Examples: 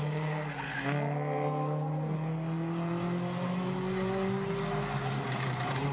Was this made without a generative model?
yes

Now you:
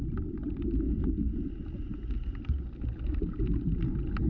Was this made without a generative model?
yes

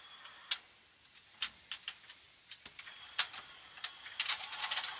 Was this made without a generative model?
yes